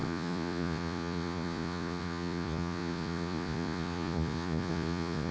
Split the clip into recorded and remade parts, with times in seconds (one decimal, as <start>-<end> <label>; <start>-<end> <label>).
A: 0.0-5.3 remade